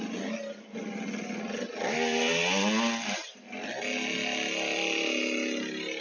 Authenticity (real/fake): real